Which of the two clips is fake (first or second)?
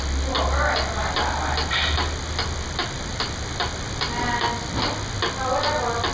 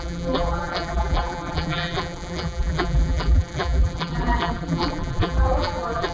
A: second